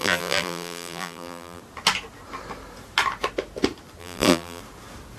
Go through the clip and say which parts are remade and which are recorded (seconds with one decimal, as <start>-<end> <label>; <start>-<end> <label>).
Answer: 0.0-1.6 remade; 1.6-4.0 recorded; 4.0-4.6 remade; 4.6-5.2 recorded